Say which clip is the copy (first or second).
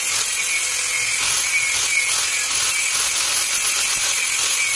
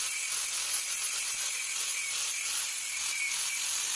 second